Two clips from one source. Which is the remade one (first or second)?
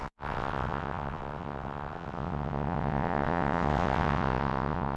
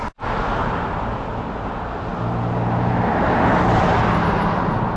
first